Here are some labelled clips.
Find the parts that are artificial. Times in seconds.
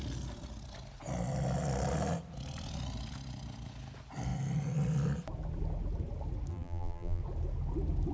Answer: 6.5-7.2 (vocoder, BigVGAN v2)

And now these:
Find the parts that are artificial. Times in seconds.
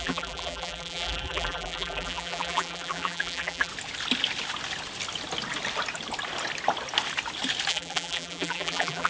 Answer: 0.0-3.7 (vocoder, BigVGAN v2); 7.7-9.1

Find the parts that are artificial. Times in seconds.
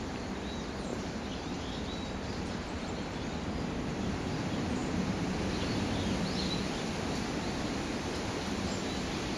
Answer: 0.9-2.8 (vocoder, BigVGAN v2); 4.8-5.9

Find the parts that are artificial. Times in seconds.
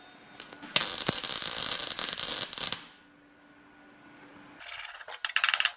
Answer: none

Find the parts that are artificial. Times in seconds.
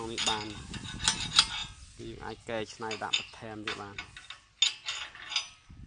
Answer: none